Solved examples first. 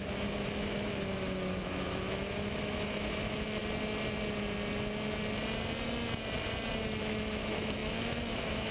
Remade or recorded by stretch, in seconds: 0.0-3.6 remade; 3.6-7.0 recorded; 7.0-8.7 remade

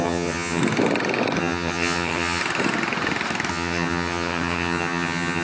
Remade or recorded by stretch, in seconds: 0.0-0.6 remade; 0.6-1.4 recorded; 1.4-2.4 remade; 2.4-3.5 recorded; 3.5-5.4 remade

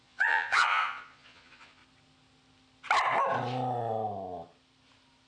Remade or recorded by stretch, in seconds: 0.0-1.8 remade; 1.8-5.3 recorded

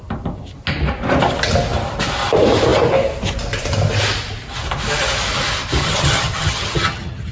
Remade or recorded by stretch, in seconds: 0.0-5.8 recorded; 5.8-7.3 remade